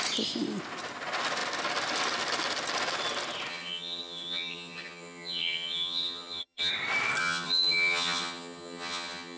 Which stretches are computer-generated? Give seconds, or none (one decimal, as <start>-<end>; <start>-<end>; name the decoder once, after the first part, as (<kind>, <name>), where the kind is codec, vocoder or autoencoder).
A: 3.5-6.7 (vocoder, HiFi-GAN); 7.2-9.4